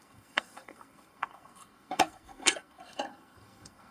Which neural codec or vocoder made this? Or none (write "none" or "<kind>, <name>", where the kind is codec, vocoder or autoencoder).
codec, SNAC